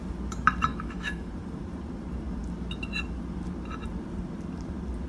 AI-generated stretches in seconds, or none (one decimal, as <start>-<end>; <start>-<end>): 0.7-1.3